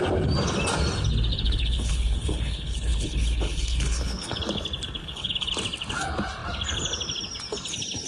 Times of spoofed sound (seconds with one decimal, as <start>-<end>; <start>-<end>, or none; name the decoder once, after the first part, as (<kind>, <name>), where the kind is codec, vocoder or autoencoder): 1.3-4.4 (codec, HILCodec); 5.0-5.5

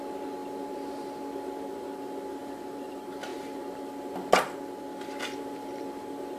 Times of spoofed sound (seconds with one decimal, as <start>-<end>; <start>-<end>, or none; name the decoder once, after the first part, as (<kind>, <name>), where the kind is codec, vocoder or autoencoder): none

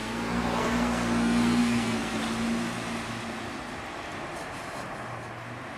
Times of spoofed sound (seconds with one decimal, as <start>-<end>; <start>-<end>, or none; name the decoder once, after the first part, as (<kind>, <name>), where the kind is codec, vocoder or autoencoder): 0.0-2.2 (codec, SNAC)

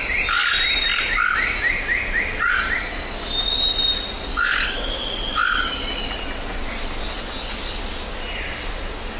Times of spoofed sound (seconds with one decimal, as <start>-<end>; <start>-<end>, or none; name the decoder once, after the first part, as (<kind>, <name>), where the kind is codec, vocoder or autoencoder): none

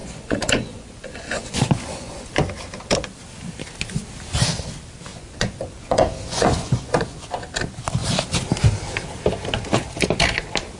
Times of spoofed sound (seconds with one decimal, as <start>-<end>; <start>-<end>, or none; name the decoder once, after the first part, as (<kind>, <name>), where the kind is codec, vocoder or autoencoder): 0.0-2.3 (vocoder, Vocos); 5.1-7.3